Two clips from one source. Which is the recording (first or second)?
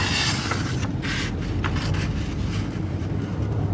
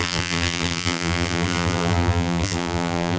first